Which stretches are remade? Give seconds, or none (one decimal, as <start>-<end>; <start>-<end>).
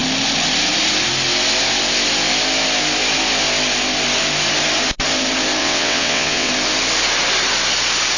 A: 5.6-6.5